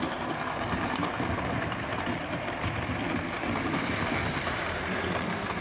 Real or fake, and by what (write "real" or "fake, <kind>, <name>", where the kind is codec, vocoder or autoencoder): real